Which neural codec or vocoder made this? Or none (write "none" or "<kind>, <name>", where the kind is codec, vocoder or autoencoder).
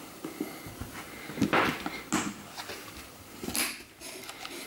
none